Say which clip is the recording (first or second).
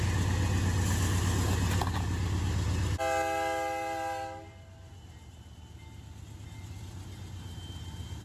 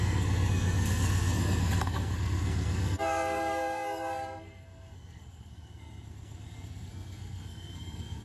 first